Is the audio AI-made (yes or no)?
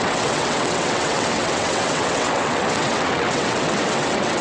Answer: yes